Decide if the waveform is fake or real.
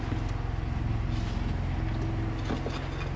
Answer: real